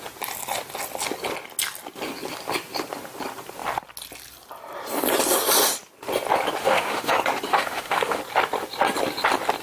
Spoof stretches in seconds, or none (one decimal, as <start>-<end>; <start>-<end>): 6.6-7.1; 7.5-8.2